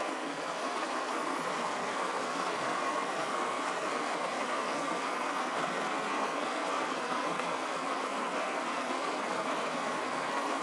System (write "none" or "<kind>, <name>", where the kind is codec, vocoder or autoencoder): codec, SNAC